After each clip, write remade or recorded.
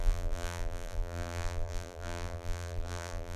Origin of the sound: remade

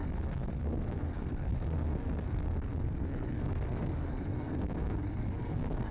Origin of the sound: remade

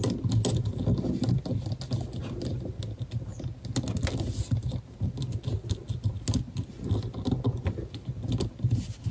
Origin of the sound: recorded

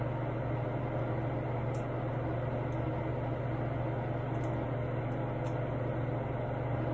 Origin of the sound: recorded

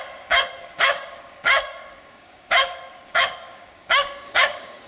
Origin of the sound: remade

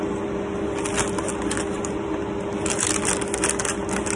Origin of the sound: recorded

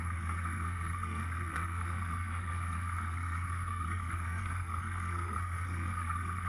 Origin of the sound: remade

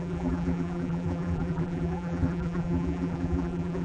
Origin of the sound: remade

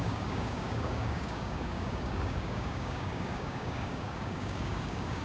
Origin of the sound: remade